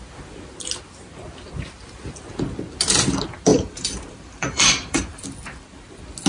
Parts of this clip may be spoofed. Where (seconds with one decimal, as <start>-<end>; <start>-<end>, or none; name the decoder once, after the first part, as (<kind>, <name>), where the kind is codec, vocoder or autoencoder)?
3.5-5.2 (vocoder, BigVGAN v2)